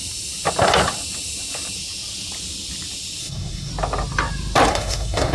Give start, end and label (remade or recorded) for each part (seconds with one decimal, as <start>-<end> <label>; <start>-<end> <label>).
0.0-3.2 recorded; 3.2-3.7 remade; 3.7-4.7 recorded; 4.7-5.3 remade